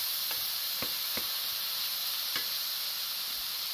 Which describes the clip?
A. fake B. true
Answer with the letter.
B